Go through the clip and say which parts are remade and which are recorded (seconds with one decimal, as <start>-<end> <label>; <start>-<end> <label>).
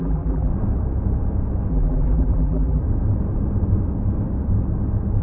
0.0-0.5 remade; 0.5-1.7 recorded; 1.7-2.8 remade; 2.8-5.2 recorded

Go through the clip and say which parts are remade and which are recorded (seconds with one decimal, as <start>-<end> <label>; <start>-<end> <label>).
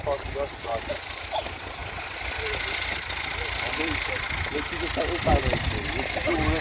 0.0-1.8 recorded; 1.8-5.3 remade; 5.3-6.6 recorded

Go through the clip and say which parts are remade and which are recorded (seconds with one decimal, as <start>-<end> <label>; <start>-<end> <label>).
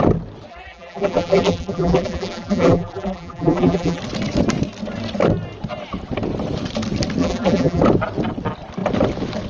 0.0-0.5 recorded; 0.5-4.0 remade; 4.0-7.2 recorded; 7.2-7.8 remade; 7.8-9.5 recorded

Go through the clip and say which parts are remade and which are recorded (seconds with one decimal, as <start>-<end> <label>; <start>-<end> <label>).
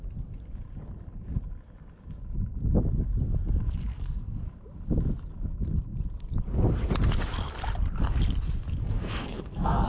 0.0-3.9 recorded; 3.9-4.4 remade; 4.4-8.8 recorded; 8.8-9.9 remade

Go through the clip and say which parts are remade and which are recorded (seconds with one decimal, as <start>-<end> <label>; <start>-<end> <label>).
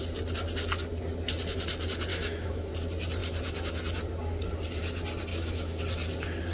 0.0-2.1 recorded; 2.1-2.7 remade; 2.7-5.3 recorded; 5.3-5.8 remade; 5.8-6.5 recorded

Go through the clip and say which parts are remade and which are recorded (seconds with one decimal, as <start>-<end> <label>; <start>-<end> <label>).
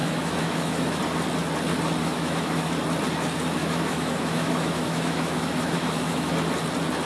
0.0-1.0 remade; 1.0-2.0 recorded; 2.0-2.7 remade; 2.7-3.6 recorded; 3.6-6.3 remade; 6.3-7.0 recorded